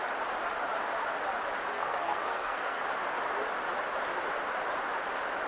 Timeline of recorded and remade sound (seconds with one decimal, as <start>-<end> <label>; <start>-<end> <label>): 0.0-1.7 recorded; 1.7-2.8 remade; 2.8-5.5 recorded